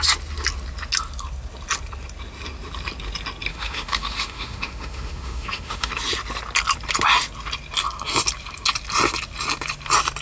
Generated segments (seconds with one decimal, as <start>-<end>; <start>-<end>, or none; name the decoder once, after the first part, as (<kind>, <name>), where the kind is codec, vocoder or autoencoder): 3.5-5.9 (autoencoder, DAC-VAE)